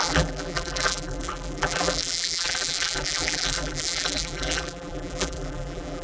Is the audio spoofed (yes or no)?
yes